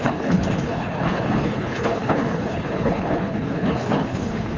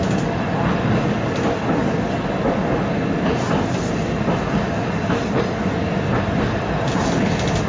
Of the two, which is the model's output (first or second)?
first